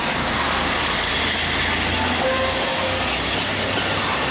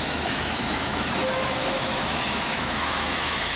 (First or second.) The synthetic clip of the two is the second